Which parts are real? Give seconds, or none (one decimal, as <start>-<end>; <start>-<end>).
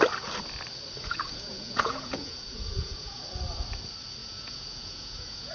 0.0-1.0; 3.2-4.2